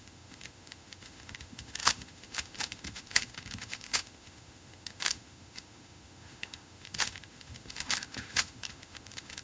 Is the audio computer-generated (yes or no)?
yes